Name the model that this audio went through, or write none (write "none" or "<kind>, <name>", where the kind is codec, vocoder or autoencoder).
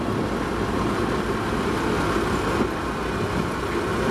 none